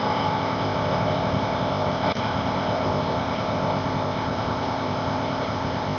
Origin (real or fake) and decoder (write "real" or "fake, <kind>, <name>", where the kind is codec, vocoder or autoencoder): fake, codec, ZipCodec